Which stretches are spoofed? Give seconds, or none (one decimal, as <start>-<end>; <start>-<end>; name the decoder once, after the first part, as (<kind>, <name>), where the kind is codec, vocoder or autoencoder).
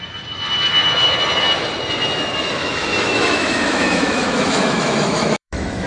2.6-5.9 (autoencoder, DAC-VAE)